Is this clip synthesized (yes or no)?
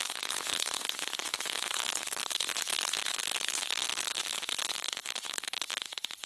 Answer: yes